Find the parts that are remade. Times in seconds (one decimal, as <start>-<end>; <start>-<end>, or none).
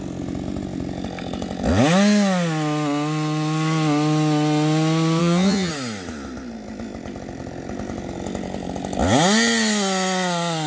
5.2-5.7